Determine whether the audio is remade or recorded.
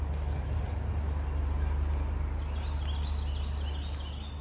recorded